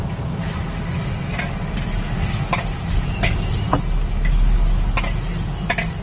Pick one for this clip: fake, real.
real